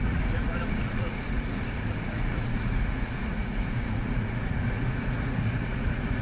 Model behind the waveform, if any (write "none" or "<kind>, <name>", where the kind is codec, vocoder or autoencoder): vocoder, Vocos